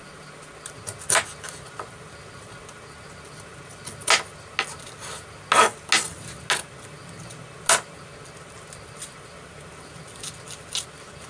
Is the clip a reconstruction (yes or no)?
no